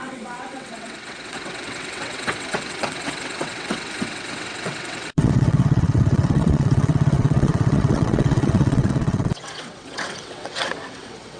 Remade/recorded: remade